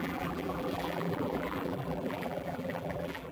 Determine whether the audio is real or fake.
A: fake